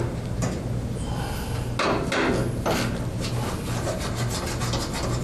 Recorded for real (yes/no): yes